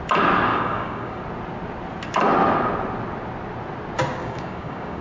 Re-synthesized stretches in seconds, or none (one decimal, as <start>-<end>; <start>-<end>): 0.5-1.2; 4.2-5.0